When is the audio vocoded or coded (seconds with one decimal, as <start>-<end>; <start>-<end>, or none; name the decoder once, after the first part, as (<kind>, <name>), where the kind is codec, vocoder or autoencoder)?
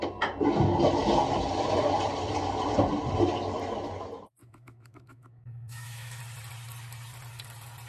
4.4-6.2 (autoencoder, DAC-VAE)